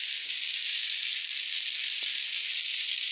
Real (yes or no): yes